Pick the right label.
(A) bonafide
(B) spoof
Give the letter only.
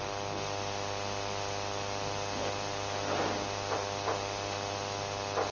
A